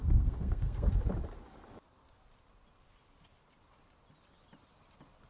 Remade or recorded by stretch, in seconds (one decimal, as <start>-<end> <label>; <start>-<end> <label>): 0.0-0.9 remade; 0.9-5.3 recorded